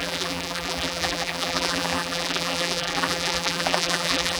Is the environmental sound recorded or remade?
remade